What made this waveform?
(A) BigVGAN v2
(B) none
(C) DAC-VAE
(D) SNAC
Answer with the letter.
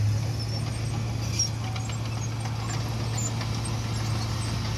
B